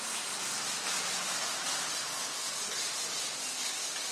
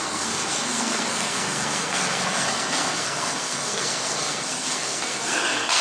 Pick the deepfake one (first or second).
second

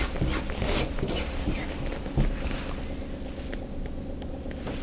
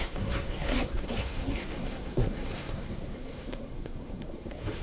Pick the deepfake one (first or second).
second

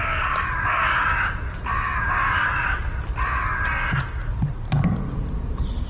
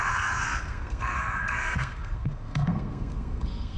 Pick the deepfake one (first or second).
second